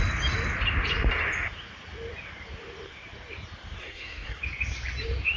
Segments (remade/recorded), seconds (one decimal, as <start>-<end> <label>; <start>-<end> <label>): 0.0-3.8 recorded; 3.8-4.4 remade; 4.4-5.4 recorded